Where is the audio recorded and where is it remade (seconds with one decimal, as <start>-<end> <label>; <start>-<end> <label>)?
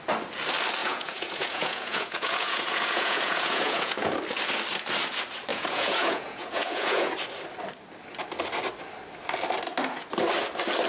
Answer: 0.0-0.8 recorded; 0.8-4.1 remade; 4.1-5.5 recorded; 5.5-7.1 remade; 7.1-10.9 recorded